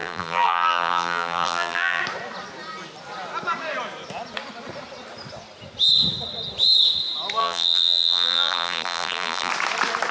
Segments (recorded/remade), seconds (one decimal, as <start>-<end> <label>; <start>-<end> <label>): 0.0-2.0 remade; 2.0-7.4 recorded; 7.4-9.5 remade; 9.5-10.1 recorded